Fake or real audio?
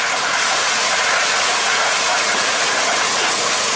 fake